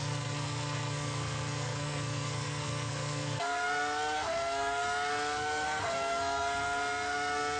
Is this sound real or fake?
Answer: fake